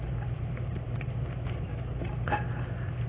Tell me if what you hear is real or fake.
real